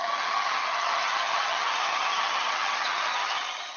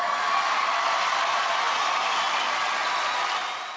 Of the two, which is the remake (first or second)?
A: first